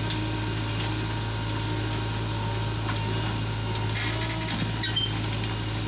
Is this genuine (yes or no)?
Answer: yes